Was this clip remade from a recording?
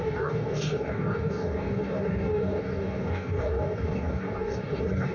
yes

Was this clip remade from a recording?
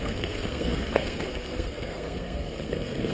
yes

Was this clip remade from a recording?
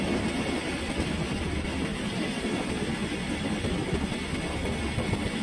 no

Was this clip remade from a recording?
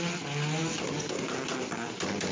no